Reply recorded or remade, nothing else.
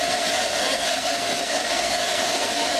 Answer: remade